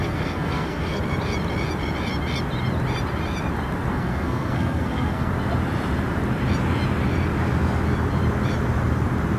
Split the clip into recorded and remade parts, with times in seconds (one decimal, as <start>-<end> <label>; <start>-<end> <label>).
0.0-1.0 remade; 1.0-3.9 recorded; 3.9-5.3 remade; 5.3-9.4 recorded